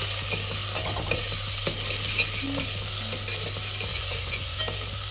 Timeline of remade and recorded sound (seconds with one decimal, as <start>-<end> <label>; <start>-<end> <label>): 0.0-3.9 recorded; 3.9-4.6 remade; 4.6-5.1 recorded